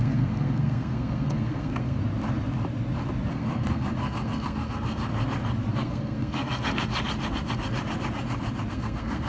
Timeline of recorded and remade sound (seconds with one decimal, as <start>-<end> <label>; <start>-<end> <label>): 0.0-2.0 remade; 2.0-3.3 recorded; 3.3-5.1 remade; 5.1-5.7 recorded; 5.7-6.9 remade; 6.9-8.7 recorded; 8.7-9.3 remade